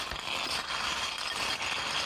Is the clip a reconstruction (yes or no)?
no